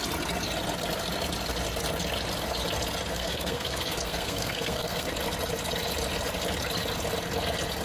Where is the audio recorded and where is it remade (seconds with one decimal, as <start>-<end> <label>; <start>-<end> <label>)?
0.0-3.1 recorded; 3.1-5.1 remade; 5.1-7.8 recorded